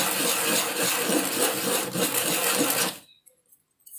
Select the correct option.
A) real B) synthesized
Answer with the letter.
A